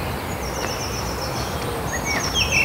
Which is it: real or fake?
real